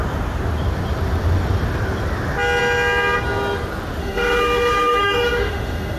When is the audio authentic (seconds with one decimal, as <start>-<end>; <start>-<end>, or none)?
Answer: 0.0-4.0